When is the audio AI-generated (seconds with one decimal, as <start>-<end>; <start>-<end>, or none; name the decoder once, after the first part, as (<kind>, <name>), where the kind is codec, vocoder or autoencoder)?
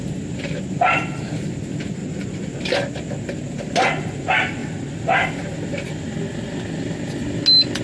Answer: 2.0-2.6 (vocoder, Vocos)